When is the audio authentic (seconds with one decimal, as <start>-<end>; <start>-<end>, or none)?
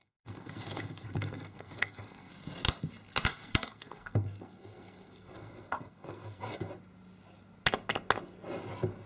2.3-3.3; 6.7-9.1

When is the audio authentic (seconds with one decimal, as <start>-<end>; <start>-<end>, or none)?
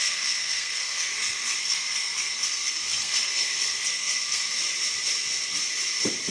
4.6-6.3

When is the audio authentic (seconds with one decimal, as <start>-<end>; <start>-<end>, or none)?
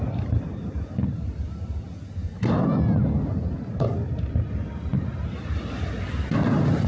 0.0-6.9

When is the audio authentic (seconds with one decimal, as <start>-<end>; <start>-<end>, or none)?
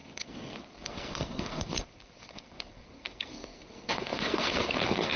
none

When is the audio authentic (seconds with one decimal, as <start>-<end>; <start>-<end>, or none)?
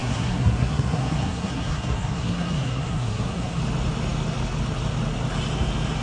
3.6-6.0